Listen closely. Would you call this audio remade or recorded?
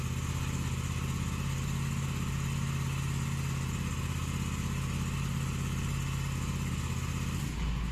recorded